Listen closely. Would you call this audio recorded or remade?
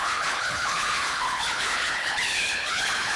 remade